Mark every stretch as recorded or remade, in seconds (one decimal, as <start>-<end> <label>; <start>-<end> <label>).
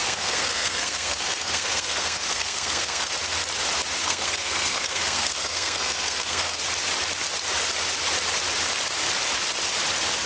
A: 0.0-3.1 remade; 3.1-4.0 recorded; 4.0-6.6 remade; 6.6-10.3 recorded